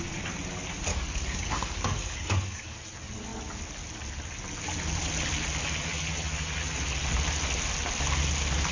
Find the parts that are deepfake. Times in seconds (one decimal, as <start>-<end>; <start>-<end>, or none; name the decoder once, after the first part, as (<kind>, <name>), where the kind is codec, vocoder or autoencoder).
0.9-2.8 (codec, DAC)